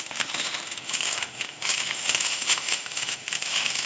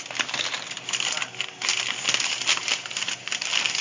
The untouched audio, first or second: second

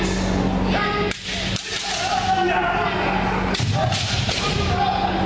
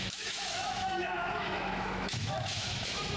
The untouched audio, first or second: first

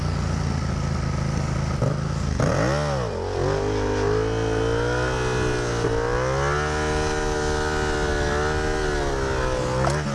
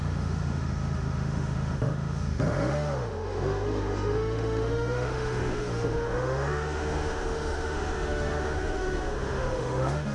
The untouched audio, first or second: first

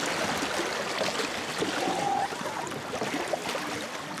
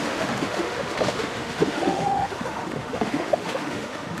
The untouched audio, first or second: first